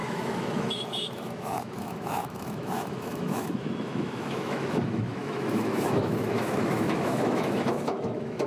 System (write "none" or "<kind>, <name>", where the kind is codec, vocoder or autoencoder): autoencoder, DAC-VAE